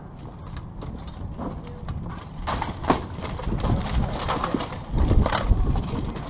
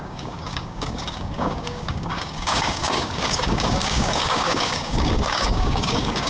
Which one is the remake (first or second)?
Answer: second